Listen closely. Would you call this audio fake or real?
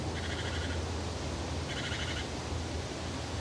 real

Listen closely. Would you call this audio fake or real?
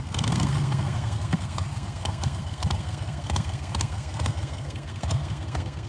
fake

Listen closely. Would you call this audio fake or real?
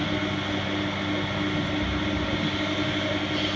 real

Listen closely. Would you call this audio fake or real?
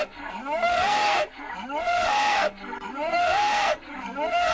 fake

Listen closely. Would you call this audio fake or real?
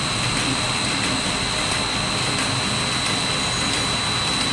real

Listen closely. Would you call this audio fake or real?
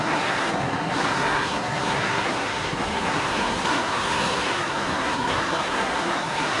fake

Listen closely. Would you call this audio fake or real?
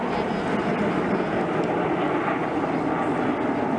real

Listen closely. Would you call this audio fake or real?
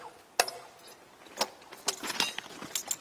real